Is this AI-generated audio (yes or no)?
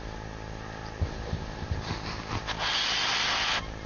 no